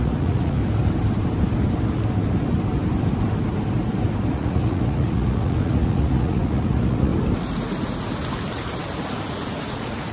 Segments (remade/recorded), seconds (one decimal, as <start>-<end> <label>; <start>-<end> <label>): 0.0-0.6 remade; 0.6-4.3 recorded; 4.3-7.1 remade; 7.1-9.3 recorded; 9.3-10.1 remade